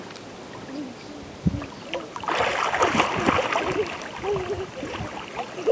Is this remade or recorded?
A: recorded